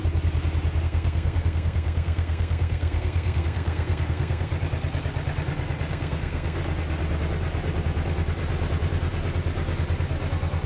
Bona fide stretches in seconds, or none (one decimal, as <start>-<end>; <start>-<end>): 0.0-0.8; 4.5-5.9; 6.6-10.7